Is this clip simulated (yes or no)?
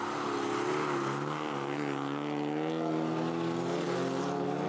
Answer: no